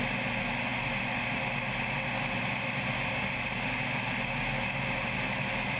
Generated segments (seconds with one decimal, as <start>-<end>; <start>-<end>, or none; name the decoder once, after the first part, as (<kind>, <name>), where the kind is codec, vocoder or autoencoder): none